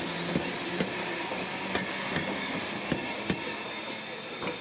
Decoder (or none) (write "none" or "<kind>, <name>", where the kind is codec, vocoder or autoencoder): none